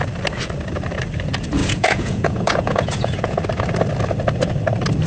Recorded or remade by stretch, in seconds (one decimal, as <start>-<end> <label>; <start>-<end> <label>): 0.0-1.6 recorded; 1.6-3.4 remade; 3.4-5.1 recorded